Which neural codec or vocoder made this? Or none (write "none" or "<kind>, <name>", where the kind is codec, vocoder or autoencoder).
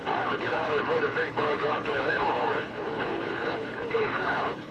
codec, HILCodec